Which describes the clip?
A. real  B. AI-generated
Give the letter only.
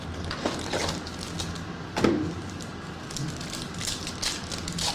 A